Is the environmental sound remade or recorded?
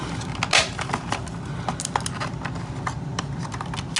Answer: recorded